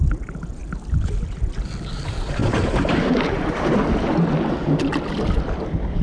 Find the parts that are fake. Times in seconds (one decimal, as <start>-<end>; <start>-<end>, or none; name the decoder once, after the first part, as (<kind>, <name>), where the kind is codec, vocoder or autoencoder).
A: none